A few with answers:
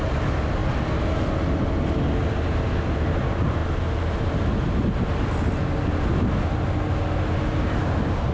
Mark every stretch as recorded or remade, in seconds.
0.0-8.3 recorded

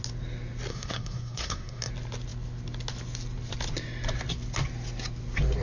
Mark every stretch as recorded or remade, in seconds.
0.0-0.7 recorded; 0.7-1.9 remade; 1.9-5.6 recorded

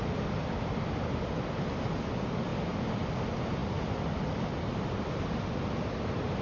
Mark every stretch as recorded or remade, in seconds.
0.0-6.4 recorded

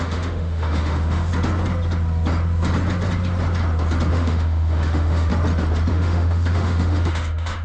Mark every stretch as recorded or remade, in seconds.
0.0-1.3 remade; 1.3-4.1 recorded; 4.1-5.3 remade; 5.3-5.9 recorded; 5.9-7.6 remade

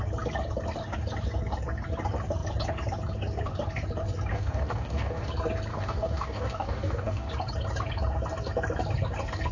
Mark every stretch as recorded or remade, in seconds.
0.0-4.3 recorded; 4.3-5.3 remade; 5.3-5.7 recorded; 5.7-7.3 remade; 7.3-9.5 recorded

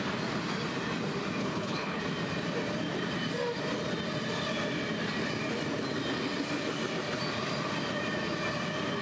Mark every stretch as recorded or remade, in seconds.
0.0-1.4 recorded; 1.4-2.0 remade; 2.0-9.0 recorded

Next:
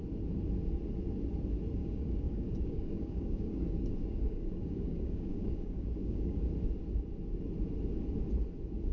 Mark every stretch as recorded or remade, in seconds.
0.0-1.8 recorded; 1.8-6.5 remade; 6.5-8.9 recorded

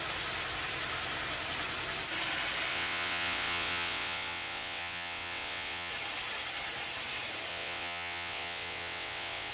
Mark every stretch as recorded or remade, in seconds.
0.0-2.7 recorded; 2.7-5.9 remade; 5.9-7.5 recorded; 7.5-9.5 remade